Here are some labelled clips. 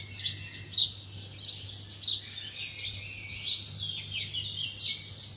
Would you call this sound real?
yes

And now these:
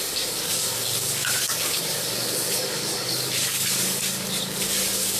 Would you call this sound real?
no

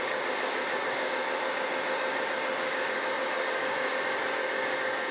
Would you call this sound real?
no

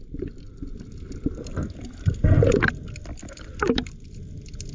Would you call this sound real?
yes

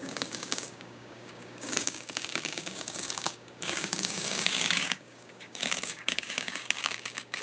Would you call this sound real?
no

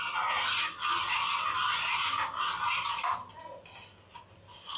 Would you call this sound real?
yes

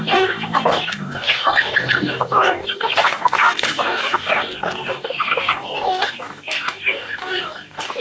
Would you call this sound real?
no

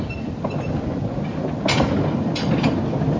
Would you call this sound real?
yes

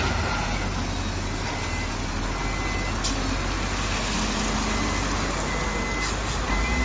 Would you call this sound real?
yes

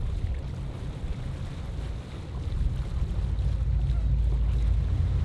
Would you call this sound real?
yes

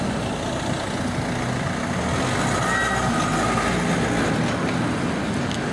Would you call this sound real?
yes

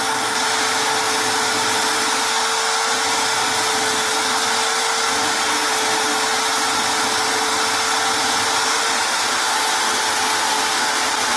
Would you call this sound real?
yes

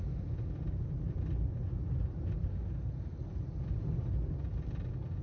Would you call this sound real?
yes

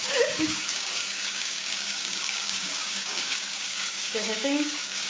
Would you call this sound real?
no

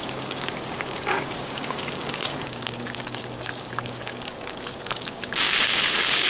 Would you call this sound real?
no